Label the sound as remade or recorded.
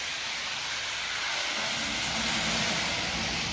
recorded